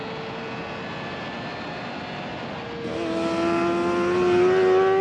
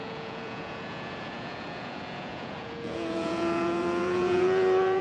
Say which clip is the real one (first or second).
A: first